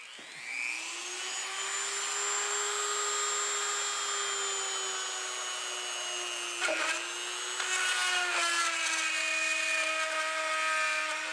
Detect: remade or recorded recorded